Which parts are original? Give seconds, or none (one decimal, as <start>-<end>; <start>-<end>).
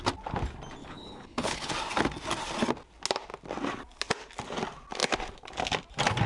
0.0-0.8; 1.7-6.3